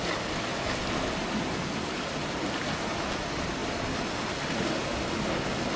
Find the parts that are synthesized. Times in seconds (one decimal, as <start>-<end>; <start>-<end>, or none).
none